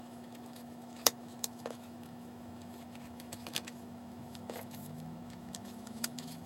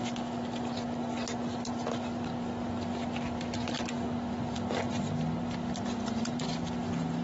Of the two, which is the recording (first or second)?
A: second